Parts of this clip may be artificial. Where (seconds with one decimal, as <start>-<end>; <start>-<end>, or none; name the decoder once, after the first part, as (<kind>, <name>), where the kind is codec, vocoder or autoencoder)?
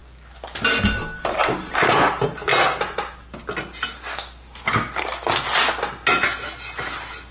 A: none